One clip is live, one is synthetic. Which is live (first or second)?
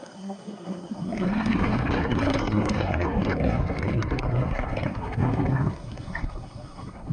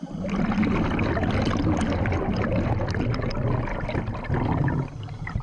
second